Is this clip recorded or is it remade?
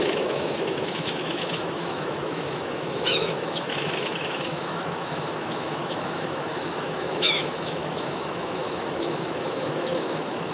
remade